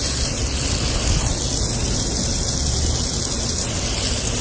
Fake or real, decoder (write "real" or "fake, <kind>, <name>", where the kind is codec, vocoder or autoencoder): real